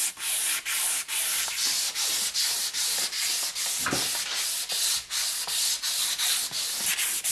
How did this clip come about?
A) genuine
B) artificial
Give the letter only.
A